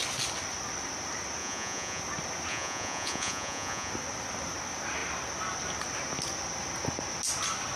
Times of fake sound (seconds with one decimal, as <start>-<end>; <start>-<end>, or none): 1.4-2.0; 2.5-3.9